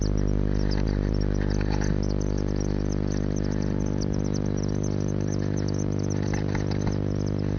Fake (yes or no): no